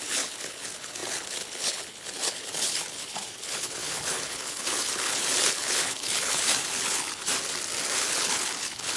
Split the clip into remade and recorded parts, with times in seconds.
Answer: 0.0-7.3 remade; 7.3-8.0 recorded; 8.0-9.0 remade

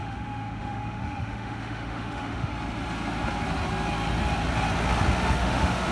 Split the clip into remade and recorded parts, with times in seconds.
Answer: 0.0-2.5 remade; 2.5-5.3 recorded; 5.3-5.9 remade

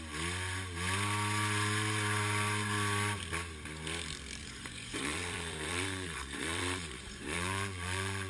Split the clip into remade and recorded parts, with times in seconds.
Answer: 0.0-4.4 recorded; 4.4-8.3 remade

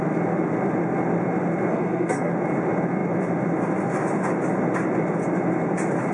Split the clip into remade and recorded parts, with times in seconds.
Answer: 0.0-1.7 recorded; 1.7-2.3 remade; 2.3-6.1 recorded

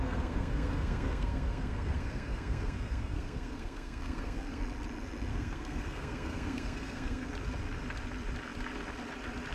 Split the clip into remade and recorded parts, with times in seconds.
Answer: 0.0-4.6 remade; 4.6-5.3 recorded; 5.3-7.3 remade; 7.3-9.5 recorded